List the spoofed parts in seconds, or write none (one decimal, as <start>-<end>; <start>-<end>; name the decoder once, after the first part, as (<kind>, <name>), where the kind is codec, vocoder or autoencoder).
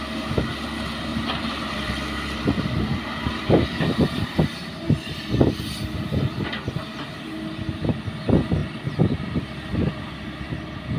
1.1-6.1 (vocoder, BigVGAN v2); 8.6-10.0